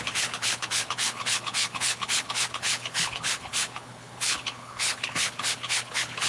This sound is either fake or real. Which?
fake